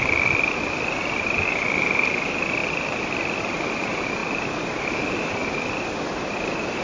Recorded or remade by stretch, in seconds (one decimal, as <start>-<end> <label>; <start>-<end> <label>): 0.0-2.6 recorded; 2.6-3.1 remade; 3.1-4.2 recorded; 4.2-4.9 remade; 4.9-6.8 recorded

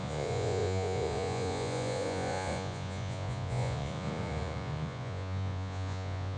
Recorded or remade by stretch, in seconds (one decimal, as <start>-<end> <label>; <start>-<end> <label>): 0.0-6.4 remade

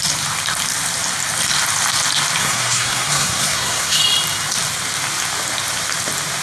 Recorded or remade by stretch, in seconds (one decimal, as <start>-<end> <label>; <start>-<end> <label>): 0.0-2.4 recorded; 2.4-4.0 remade; 4.0-6.4 recorded

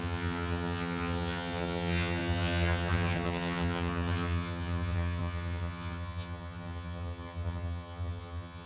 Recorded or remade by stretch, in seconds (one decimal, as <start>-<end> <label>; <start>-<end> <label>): 0.0-8.7 remade

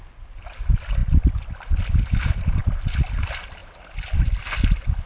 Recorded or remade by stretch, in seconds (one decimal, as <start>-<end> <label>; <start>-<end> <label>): 0.0-5.1 recorded

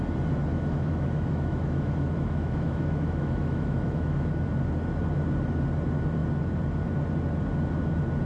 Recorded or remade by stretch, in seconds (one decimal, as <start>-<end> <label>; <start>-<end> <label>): 0.0-0.5 recorded; 0.5-4.3 remade; 4.3-8.3 recorded